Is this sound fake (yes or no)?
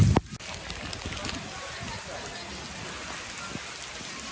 no